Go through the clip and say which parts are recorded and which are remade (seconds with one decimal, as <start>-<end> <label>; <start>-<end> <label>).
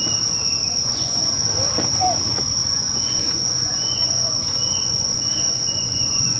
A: 0.0-0.6 recorded; 0.6-1.3 remade; 1.3-2.6 recorded; 2.6-6.4 remade